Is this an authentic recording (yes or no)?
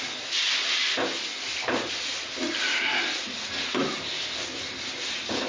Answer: yes